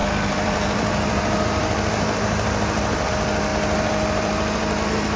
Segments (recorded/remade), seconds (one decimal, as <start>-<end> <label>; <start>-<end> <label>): 0.0-3.1 remade; 3.1-3.5 recorded; 3.5-4.8 remade; 4.8-5.2 recorded